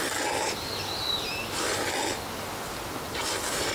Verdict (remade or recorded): recorded